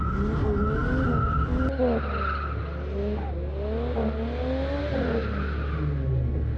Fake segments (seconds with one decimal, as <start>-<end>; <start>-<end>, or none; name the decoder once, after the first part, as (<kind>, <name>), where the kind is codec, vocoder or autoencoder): none